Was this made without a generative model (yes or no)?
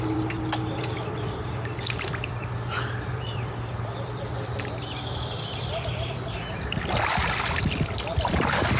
no